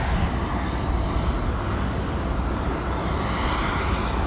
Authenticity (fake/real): real